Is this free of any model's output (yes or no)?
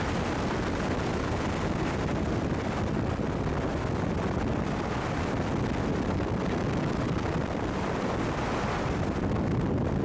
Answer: yes